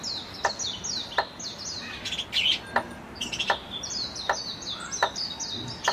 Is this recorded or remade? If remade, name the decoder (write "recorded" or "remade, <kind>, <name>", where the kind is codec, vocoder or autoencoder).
recorded